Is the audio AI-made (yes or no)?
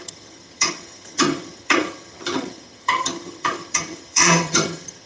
yes